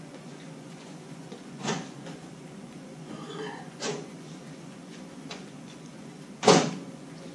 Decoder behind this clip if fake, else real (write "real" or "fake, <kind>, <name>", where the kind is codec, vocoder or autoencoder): fake, vocoder, Vocos